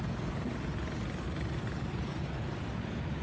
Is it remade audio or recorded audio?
recorded